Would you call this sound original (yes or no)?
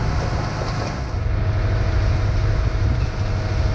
yes